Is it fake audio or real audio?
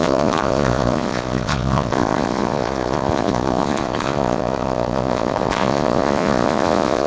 fake